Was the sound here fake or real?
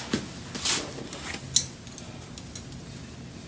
real